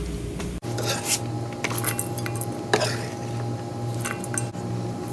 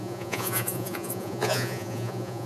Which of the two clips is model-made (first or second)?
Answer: second